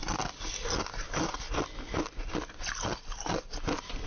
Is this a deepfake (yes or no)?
no